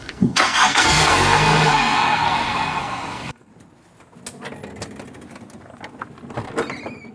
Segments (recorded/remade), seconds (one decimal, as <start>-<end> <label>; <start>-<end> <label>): 0.0-3.5 remade; 3.5-7.1 recorded